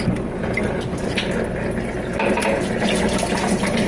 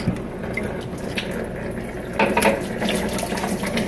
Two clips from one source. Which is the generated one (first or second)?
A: first